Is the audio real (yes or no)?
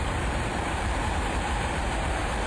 no